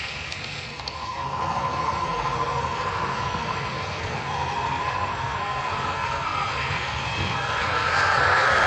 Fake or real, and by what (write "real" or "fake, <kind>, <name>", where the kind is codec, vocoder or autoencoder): fake, codec, SNAC